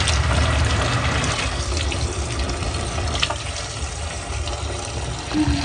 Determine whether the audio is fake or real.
real